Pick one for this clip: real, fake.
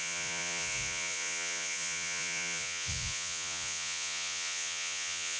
fake